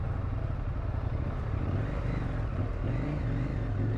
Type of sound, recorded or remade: recorded